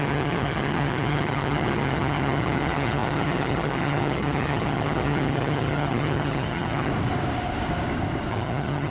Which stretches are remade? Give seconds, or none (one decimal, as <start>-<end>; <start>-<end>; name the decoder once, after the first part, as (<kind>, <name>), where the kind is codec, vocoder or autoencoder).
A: 0.0-6.9 (vocoder, HiFi-GAN); 8.3-8.9